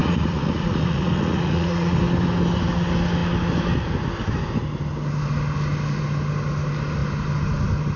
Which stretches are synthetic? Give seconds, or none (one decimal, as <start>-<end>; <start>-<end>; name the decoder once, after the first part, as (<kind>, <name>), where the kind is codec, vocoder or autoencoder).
0.0-2.0 (vocoder, Vocos)